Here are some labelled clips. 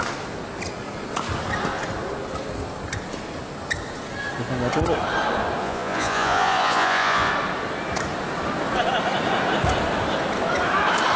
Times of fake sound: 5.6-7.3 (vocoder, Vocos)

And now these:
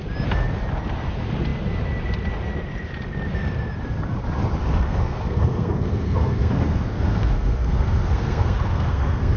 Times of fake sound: 4.6-9.4 (codec, SNAC)

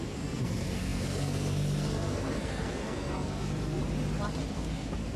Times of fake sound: 0.0-3.8 (codec, SNAC); 4.5-5.2

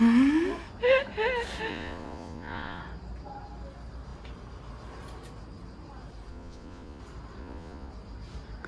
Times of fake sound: 1.7-2.8 (vocoder, Vocos); 6.3-7.0; 7.4-7.9

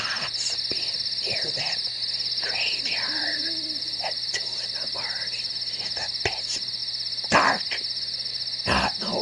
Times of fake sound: none

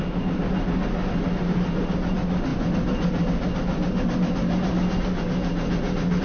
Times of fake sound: none

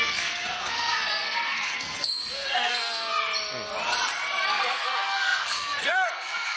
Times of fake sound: 0.0-3.1 (codec, SNAC); 4.5-6.6

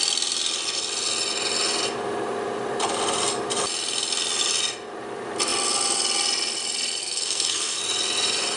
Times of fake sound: 7.0-7.8 (codec, SNAC)